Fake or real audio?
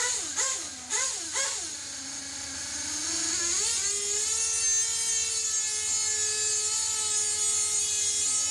real